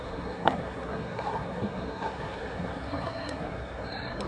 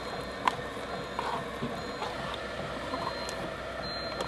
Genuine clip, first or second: second